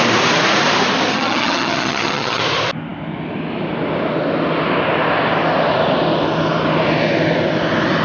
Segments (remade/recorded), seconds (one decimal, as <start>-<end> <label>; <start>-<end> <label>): 0.0-1.1 recorded; 1.1-2.4 remade; 2.4-8.0 recorded